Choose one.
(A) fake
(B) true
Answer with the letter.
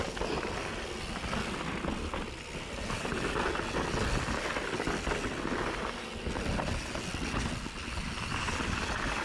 B